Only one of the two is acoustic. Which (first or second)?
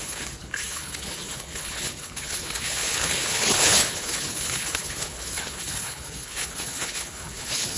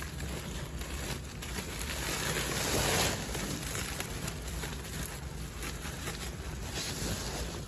second